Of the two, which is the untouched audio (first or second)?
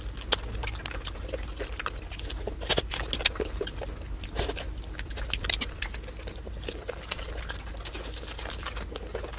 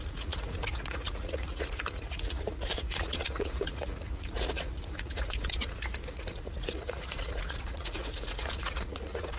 first